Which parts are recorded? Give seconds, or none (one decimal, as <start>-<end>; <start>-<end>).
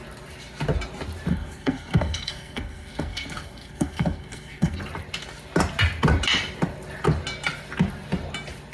0.0-1.3; 4.8-8.7